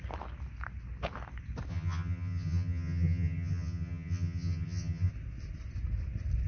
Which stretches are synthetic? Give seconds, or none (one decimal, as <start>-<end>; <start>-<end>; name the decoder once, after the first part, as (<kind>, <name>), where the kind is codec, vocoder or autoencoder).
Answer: 1.7-5.1 (vocoder, HiFi-GAN)